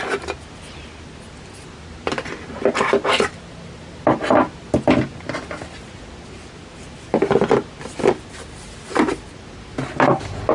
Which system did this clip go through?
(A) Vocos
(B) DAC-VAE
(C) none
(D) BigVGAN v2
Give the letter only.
C